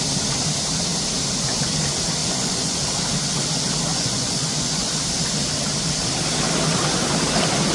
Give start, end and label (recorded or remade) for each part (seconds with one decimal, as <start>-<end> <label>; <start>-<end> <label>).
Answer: 0.0-2.2 recorded; 2.2-2.8 remade; 2.8-3.9 recorded; 3.9-4.9 remade; 4.9-7.7 recorded